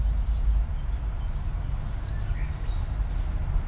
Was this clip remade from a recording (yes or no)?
no